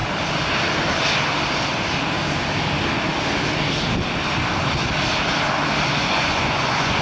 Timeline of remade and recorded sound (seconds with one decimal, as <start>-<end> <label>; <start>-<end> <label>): 0.0-6.0 recorded; 6.0-7.0 remade